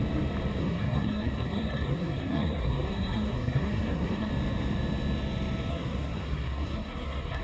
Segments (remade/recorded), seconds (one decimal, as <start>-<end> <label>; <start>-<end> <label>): 0.0-0.6 recorded; 0.6-4.3 remade; 4.3-5.7 recorded; 5.7-7.4 remade